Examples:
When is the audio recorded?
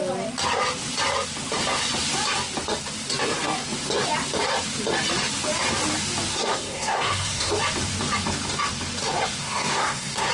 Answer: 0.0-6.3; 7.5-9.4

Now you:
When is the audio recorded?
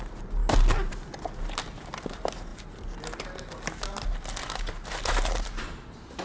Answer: 0.0-6.2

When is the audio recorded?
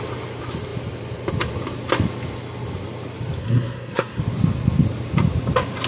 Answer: 0.0-3.4; 4.2-5.9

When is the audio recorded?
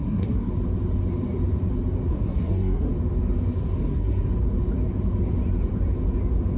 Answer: 0.5-2.1; 2.9-3.8; 4.3-6.6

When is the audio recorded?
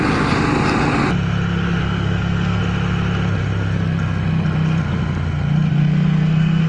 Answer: 0.0-1.8; 2.6-5.7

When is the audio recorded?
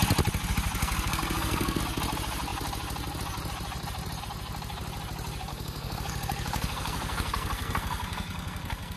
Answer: 0.0-0.8; 1.8-5.5